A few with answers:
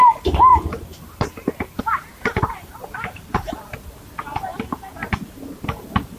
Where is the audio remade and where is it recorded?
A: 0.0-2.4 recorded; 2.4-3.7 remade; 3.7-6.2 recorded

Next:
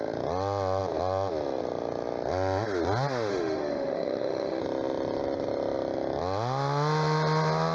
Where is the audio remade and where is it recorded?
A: 0.0-3.3 recorded; 3.3-4.6 remade; 4.6-7.7 recorded

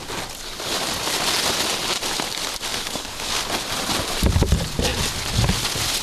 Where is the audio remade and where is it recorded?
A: 0.0-2.7 recorded; 2.7-3.4 remade; 3.4-6.0 recorded

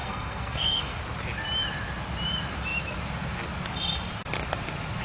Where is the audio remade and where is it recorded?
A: 0.0-1.0 remade; 1.0-5.0 recorded

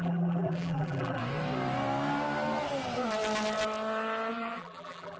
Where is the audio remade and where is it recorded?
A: 0.0-1.2 remade; 1.2-4.3 recorded; 4.3-5.2 remade

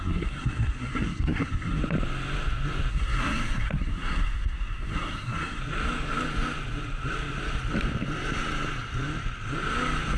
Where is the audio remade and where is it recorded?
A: 0.0-1.8 remade; 1.8-2.9 recorded; 2.9-5.6 remade; 5.6-10.2 recorded

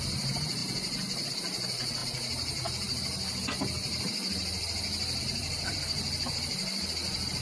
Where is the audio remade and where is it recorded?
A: 0.0-7.4 remade